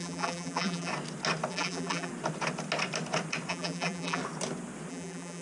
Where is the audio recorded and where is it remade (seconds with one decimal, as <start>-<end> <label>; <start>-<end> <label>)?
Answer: 0.0-0.9 remade; 0.9-1.5 recorded; 1.5-2.1 remade; 2.1-3.5 recorded; 3.5-4.2 remade; 4.2-4.9 recorded; 4.9-5.4 remade